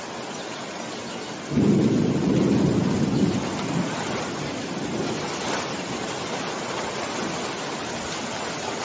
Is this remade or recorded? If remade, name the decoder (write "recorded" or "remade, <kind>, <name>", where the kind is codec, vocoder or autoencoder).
recorded